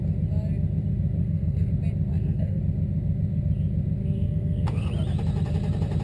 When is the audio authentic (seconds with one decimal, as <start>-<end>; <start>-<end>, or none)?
0.0-1.2; 1.7-2.1; 2.6-4.0; 4.9-6.0